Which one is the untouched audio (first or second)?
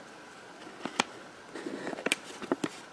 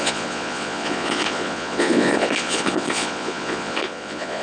first